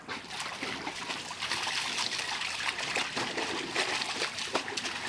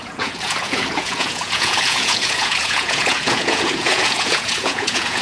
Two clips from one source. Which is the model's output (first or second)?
second